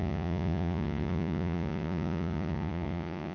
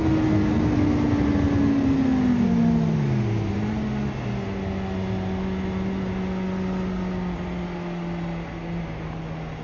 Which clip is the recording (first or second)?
second